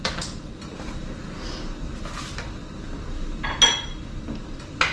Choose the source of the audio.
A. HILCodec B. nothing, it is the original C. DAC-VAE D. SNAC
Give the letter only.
B